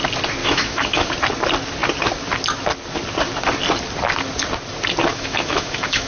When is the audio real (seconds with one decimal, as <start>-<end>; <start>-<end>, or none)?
0.0-0.4; 1.1-5.1